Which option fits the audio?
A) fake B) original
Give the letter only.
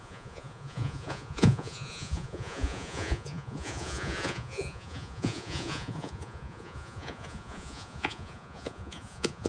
A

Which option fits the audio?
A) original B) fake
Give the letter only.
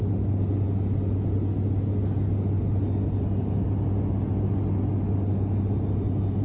A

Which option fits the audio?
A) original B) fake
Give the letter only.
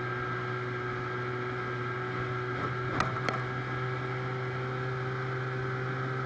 A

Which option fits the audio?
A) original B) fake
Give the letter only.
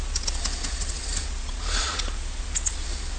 B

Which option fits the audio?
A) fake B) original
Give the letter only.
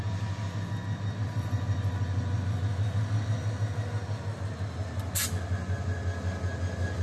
B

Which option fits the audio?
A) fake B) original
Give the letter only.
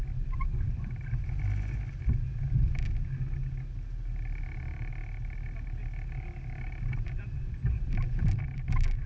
B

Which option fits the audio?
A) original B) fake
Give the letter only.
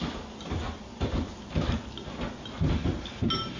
A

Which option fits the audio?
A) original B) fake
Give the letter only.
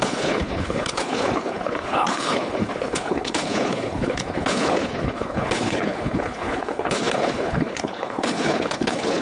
B